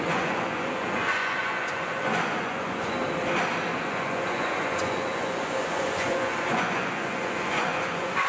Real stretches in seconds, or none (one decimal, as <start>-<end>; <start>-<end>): 3.0-3.8